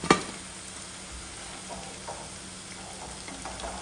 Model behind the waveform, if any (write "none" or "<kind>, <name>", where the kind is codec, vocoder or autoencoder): none